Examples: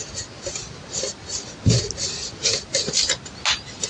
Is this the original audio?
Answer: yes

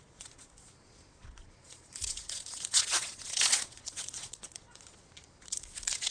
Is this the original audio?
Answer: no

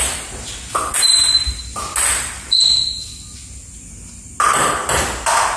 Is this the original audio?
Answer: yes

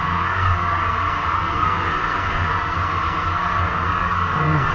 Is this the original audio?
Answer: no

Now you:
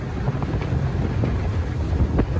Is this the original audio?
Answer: yes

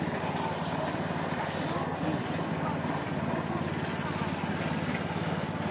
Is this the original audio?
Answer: yes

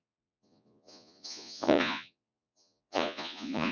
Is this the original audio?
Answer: no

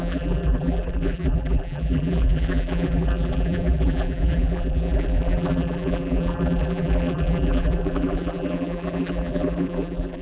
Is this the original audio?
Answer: no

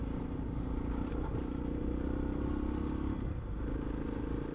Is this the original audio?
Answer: yes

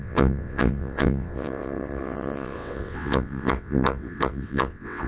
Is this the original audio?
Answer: no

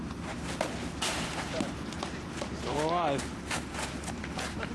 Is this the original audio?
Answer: yes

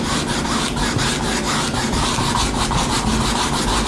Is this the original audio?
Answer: yes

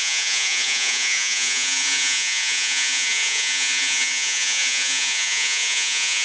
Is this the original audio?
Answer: no